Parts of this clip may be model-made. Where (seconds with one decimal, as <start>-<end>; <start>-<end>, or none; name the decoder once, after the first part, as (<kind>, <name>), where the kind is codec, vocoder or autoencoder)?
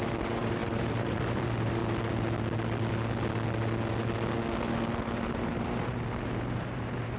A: 0.0-1.8 (vocoder, BigVGAN v2); 5.0-7.2